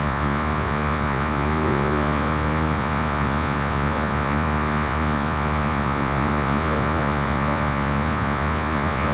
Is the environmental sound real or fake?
fake